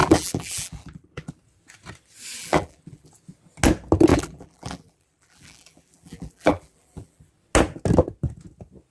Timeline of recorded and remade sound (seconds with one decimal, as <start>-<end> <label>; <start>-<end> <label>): 0.0-1.3 remade; 1.3-2.4 recorded; 2.4-3.1 remade; 3.1-4.1 recorded; 4.1-7.3 remade; 7.3-8.9 recorded